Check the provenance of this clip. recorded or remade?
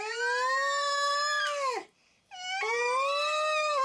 recorded